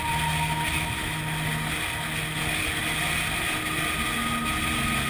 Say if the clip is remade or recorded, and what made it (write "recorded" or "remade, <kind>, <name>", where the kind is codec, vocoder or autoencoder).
recorded